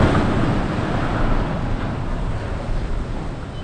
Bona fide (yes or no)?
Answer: yes